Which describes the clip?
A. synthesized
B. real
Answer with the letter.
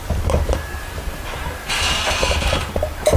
A